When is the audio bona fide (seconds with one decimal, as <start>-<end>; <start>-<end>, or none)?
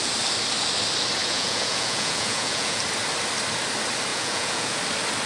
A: 0.0-1.2; 2.8-4.1; 4.8-5.3